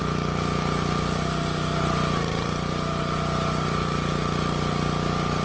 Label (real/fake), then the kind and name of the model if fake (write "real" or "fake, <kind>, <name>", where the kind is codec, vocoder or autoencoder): real